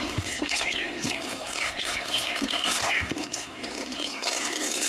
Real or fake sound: fake